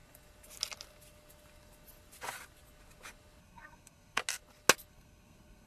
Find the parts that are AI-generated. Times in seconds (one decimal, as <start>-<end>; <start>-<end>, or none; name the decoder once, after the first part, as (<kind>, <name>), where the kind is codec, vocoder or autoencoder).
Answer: 3.4-4.2 (codec, SNAC); 4.9-5.7